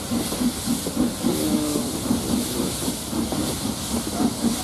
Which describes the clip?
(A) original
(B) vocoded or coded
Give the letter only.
A